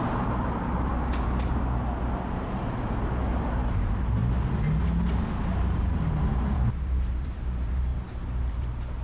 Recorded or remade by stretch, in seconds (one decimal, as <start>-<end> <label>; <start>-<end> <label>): 0.0-0.9 remade; 0.9-2.0 recorded; 2.0-4.2 remade; 4.2-6.2 recorded; 6.2-9.0 remade